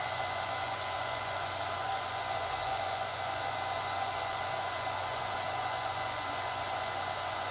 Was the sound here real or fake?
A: fake